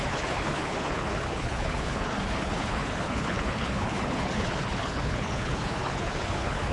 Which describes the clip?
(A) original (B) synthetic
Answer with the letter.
B